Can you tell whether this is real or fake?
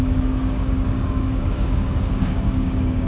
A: fake